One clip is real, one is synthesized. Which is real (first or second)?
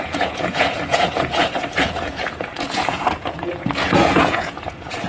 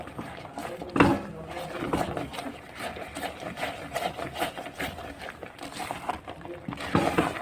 second